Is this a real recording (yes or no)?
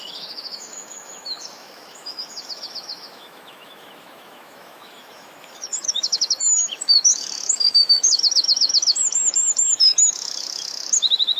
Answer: no